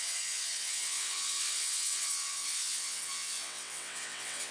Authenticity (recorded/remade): remade